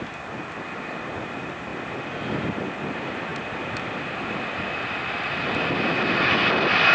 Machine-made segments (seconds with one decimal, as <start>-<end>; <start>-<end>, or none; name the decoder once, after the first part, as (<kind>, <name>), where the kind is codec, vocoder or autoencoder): none